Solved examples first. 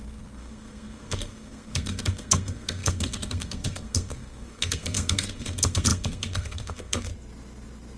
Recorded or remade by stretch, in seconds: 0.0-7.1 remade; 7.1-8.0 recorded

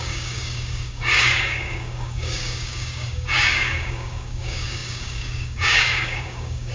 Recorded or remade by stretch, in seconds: 0.0-6.7 remade

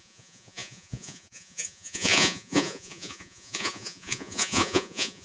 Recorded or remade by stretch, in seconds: 0.0-5.2 remade

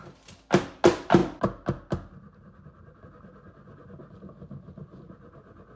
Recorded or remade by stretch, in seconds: 0.0-5.8 recorded

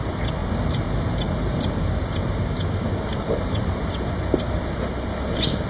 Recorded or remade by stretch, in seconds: 0.0-0.4 recorded; 0.4-1.8 remade; 1.8-3.1 recorded; 3.1-3.9 remade; 3.9-5.7 recorded

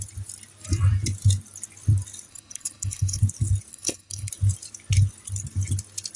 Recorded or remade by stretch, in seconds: 0.0-2.3 recorded; 2.3-3.2 remade; 3.2-3.7 recorded; 3.7-4.3 remade; 4.3-6.2 recorded

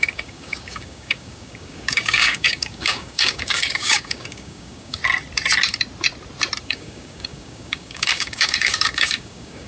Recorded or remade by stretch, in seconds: 0.0-5.0 remade; 5.0-6.6 recorded; 6.6-9.7 remade